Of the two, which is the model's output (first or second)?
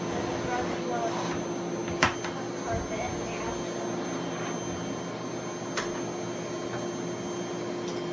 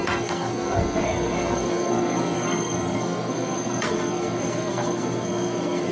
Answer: second